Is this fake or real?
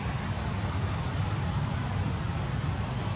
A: real